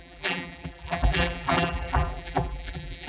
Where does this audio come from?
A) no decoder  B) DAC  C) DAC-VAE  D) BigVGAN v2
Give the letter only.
D